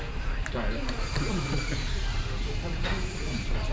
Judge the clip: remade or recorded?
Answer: remade